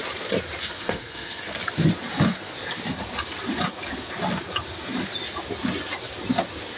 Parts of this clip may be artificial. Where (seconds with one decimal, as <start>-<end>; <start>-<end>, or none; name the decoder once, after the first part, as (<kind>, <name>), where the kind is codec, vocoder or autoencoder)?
0.6-1.6 (codec, SNAC)